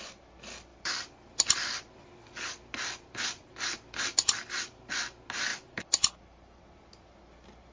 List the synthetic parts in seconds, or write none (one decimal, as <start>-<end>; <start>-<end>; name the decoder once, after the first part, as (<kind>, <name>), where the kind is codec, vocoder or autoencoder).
0.7-4.9 (vocoder, BigVGAN v2); 5.5-6.6